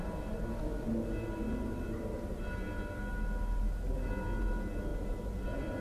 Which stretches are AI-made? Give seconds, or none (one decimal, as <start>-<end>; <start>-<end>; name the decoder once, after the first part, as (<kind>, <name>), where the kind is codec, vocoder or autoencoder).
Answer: none